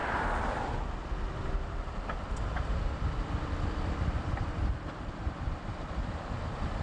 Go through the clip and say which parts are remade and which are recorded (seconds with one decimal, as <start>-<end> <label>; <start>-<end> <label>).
0.0-6.8 recorded